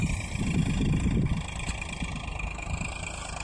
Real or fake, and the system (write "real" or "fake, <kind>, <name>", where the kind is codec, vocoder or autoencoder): real